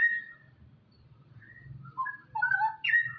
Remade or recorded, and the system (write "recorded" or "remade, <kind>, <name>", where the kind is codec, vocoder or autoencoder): recorded